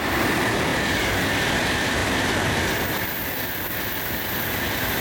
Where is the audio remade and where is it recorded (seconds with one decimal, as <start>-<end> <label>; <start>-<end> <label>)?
0.0-5.0 remade